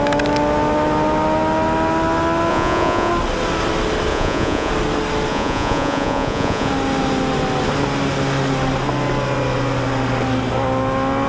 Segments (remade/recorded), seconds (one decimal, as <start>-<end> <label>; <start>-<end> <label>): 0.0-2.5 recorded; 2.5-3.1 remade; 3.1-4.1 recorded; 4.1-4.7 remade; 4.7-5.3 recorded; 5.3-6.7 remade; 6.7-11.3 recorded